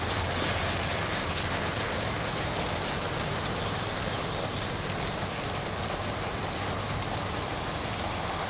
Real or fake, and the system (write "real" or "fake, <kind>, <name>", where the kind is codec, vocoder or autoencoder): real